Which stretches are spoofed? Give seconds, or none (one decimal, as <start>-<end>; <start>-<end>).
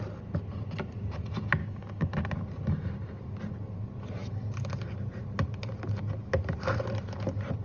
1.6-2.1